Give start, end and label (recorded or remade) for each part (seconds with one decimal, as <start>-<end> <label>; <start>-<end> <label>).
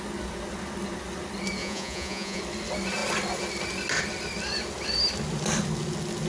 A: 0.0-1.6 recorded; 1.6-2.4 remade; 2.4-6.3 recorded